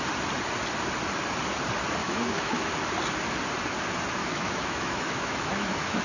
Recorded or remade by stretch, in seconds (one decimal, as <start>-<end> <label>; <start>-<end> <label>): 0.0-2.0 recorded; 2.0-2.7 remade; 2.7-4.2 recorded; 4.2-6.0 remade